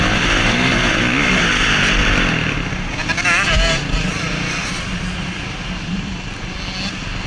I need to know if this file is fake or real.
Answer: real